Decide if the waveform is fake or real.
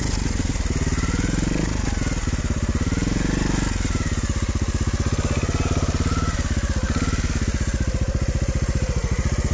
real